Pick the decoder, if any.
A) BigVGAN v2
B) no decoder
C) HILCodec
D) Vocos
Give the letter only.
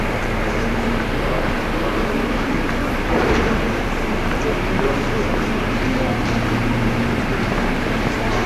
A